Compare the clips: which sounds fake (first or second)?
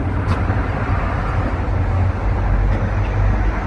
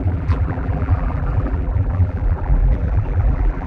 second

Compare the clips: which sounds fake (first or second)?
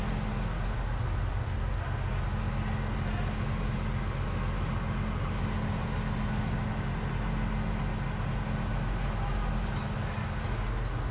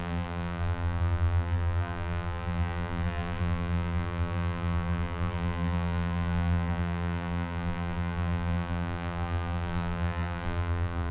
second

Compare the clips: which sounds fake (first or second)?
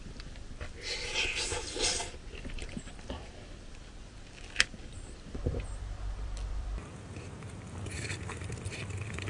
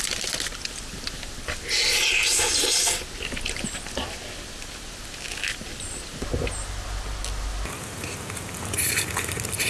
first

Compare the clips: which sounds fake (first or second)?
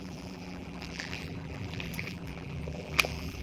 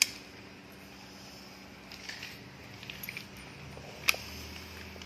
first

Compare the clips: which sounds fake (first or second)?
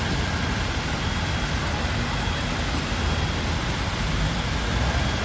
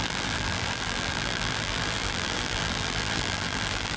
second